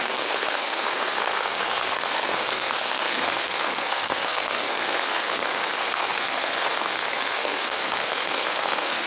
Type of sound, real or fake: fake